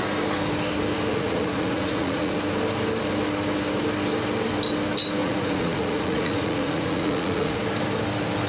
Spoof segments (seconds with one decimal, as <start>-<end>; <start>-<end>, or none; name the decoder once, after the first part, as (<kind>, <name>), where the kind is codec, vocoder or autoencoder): 1.1-2.3 (vocoder, Vocos); 5.2-7.6